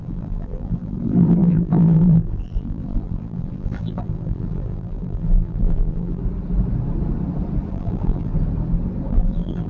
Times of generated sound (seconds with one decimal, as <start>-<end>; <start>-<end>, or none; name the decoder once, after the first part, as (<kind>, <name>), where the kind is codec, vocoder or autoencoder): 0.0-6.2 (vocoder, BigVGAN v2); 7.7-8.3; 9.1-9.7